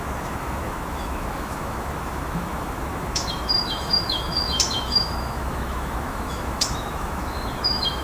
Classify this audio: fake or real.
fake